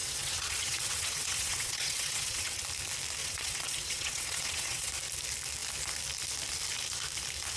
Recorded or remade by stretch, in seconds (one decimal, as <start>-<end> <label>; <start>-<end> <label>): 0.0-2.6 remade; 2.6-3.2 recorded; 3.2-4.9 remade; 4.9-7.6 recorded